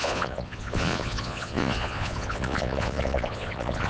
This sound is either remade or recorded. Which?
remade